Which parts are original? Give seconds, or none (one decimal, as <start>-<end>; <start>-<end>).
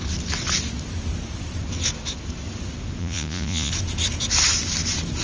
0.0-3.0; 3.7-5.2